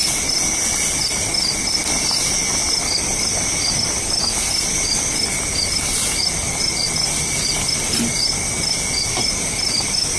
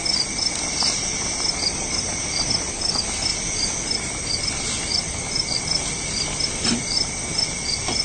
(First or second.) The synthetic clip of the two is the second